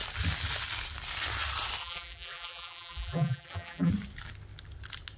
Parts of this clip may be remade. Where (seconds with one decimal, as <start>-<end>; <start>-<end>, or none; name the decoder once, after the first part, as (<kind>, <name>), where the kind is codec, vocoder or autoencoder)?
1.8-3.9 (vocoder, BigVGAN v2)